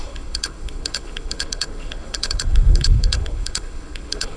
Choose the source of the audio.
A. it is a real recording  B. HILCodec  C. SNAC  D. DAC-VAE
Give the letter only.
B